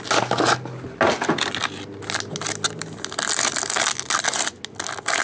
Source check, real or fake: real